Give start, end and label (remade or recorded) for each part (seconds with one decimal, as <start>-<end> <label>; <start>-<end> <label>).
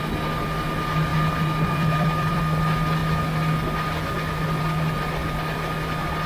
0.0-1.1 recorded; 1.1-2.4 remade; 2.4-6.3 recorded